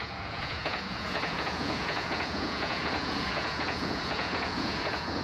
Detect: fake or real fake